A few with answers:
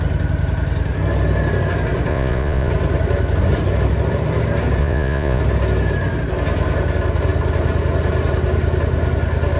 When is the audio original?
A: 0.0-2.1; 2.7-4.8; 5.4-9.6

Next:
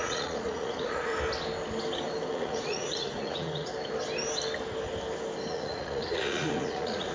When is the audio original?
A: 1.1-2.3; 3.7-5.5

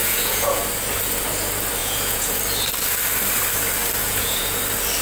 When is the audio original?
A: 0.6-1.8; 2.4-4.0; 4.6-5.0

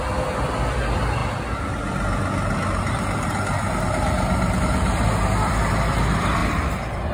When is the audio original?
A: 0.0-6.4

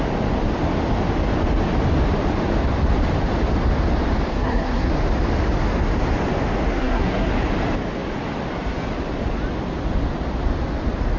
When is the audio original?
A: 0.0-4.3; 4.9-6.7; 7.3-11.2

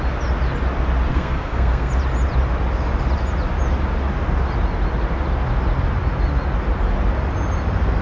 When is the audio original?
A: 0.0-1.1; 1.9-8.0

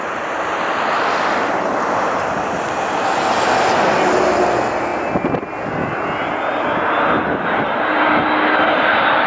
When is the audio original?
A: 0.0-9.3

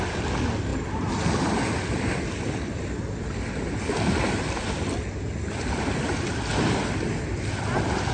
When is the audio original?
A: 0.0-8.1